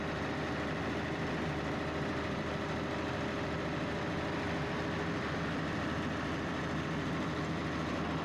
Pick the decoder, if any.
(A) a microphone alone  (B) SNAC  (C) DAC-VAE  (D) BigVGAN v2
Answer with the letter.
D